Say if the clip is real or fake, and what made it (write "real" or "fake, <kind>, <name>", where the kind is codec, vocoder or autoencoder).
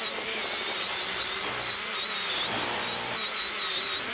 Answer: real